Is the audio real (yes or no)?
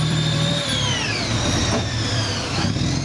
no